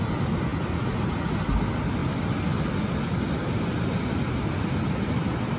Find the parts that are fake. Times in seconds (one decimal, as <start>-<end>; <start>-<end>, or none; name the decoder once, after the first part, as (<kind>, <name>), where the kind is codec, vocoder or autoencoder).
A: none